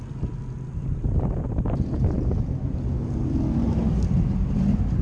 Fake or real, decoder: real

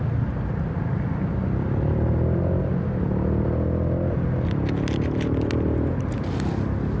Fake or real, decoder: real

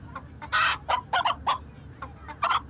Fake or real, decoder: real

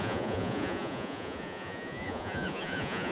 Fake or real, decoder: fake, vocoder, Vocos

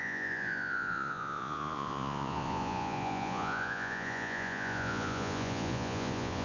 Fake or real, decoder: fake, vocoder, Vocos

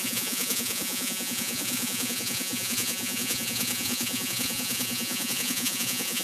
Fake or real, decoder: fake, vocoder, Vocos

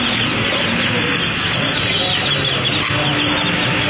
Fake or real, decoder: real